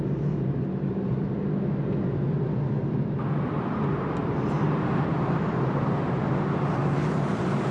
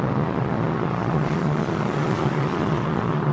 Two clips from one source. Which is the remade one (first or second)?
second